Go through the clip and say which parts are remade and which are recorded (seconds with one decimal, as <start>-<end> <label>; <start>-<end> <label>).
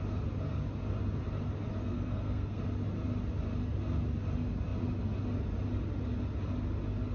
0.0-1.8 recorded; 1.8-2.6 remade; 2.6-7.1 recorded